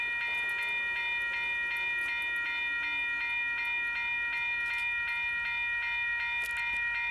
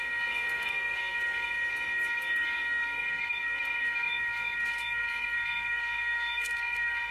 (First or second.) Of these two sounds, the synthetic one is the second